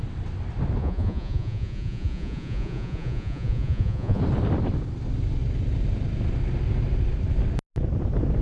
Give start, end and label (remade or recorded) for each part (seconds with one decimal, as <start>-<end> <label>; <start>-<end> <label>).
0.0-0.8 recorded; 0.8-4.2 remade; 4.2-8.4 recorded